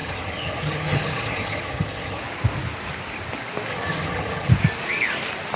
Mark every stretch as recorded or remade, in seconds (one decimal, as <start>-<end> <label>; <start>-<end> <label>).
0.0-2.2 remade; 2.2-3.7 recorded; 3.7-4.5 remade; 4.5-5.6 recorded